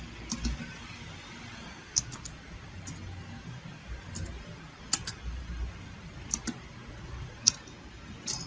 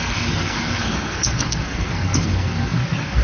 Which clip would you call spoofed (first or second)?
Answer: second